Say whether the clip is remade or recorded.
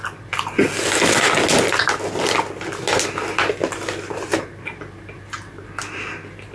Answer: recorded